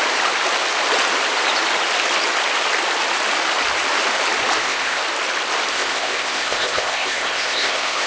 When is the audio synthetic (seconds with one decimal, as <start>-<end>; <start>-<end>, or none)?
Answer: 4.6-5.0; 5.7-8.1